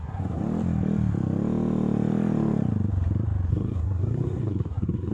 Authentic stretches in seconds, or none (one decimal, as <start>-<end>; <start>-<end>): 0.4-3.5